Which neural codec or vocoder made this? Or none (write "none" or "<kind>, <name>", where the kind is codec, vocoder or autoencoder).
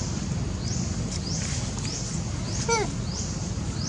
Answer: vocoder, BigVGAN v2